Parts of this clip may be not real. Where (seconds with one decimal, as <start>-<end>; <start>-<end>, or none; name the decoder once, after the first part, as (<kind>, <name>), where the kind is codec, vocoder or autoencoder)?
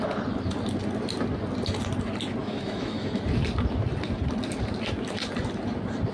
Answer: 2.4-3.2 (autoencoder, DAC-VAE)